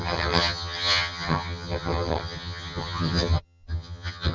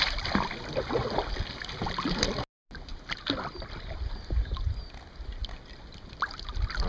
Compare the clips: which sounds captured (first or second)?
second